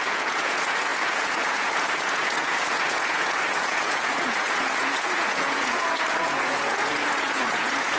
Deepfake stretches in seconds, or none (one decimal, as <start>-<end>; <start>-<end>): 0.0-8.0